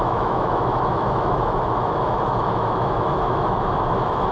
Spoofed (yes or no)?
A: yes